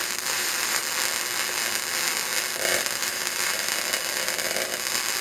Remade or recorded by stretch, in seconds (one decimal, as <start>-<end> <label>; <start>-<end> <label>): 0.0-0.8 remade; 0.8-3.0 recorded; 3.0-3.7 remade; 3.7-5.2 recorded